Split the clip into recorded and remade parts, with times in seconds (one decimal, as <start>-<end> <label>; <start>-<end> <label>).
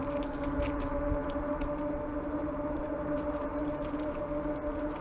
0.0-1.2 recorded; 1.2-4.2 remade; 4.2-5.0 recorded